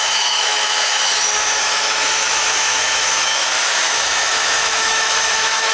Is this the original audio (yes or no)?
no